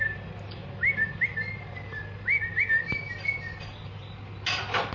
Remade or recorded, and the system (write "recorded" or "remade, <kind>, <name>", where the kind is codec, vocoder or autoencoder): recorded